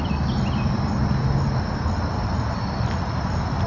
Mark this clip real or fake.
real